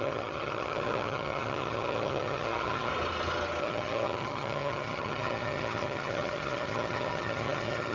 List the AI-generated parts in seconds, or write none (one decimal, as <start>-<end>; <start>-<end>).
0.0-2.9; 3.6-7.9